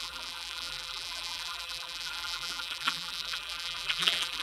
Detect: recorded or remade remade